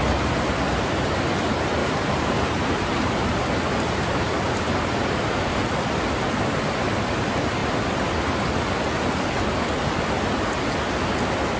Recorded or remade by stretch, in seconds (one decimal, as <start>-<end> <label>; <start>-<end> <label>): 0.0-1.8 recorded; 1.8-5.5 remade; 5.5-11.6 recorded